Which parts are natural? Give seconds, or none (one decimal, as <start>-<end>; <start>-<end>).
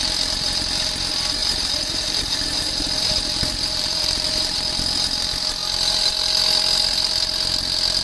0.0-1.4; 4.7-8.0